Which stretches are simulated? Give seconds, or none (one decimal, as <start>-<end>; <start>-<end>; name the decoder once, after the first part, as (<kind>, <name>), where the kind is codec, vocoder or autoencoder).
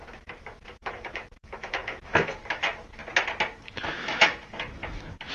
0.0-3.0 (autoencoder, DAC-VAE); 3.6-5.3